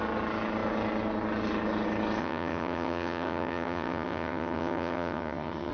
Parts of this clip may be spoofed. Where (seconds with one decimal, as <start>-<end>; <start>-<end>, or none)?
2.2-5.7